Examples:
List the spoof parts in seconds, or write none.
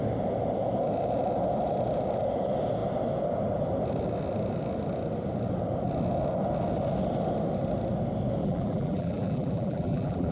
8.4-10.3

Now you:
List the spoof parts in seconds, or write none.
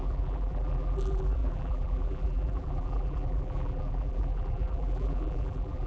0.0-5.9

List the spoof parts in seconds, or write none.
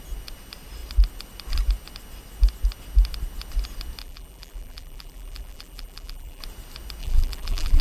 4.0-6.4; 7.0-7.8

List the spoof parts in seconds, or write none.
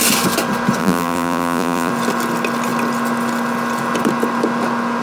0.8-1.9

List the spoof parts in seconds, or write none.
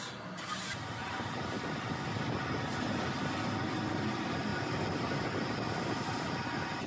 0.0-6.9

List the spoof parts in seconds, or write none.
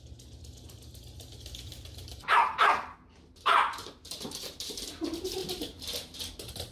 1.7-4.7; 5.4-6.2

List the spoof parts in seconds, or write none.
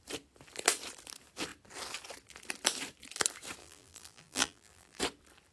3.6-5.0